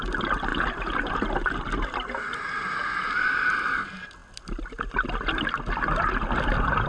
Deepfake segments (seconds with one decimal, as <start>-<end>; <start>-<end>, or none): none